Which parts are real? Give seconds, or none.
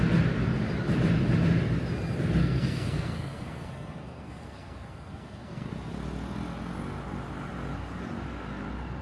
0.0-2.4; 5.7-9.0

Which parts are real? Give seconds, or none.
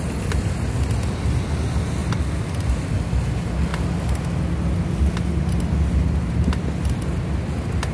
0.0-7.9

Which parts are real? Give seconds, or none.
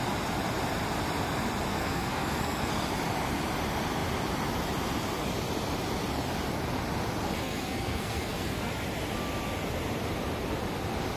0.0-1.7; 2.7-7.4; 8.7-11.2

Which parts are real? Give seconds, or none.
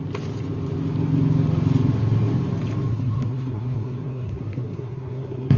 0.0-2.9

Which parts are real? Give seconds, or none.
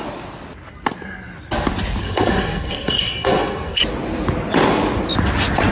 0.0-2.0; 3.8-5.7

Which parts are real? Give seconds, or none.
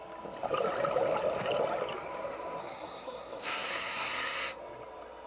0.0-2.6; 4.6-5.3